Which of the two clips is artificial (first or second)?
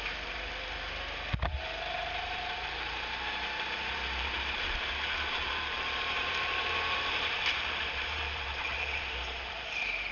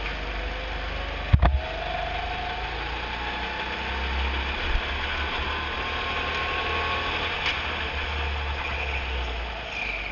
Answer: first